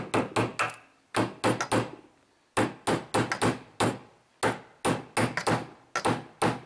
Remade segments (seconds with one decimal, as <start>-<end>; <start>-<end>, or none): none